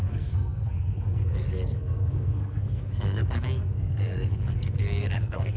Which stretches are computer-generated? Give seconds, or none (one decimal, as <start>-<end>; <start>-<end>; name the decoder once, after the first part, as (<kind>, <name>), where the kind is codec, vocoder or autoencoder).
0.0-5.6 (codec, SNAC)